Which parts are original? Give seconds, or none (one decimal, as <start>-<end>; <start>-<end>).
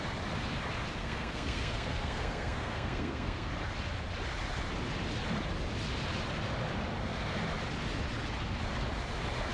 0.0-1.0; 3.5-9.5